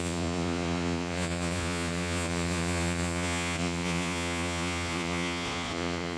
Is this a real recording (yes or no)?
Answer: no